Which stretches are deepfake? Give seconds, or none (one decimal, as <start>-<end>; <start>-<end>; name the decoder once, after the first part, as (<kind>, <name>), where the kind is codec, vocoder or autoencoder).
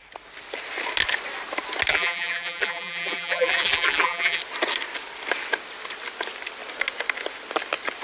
1.9-4.4 (vocoder, BigVGAN v2)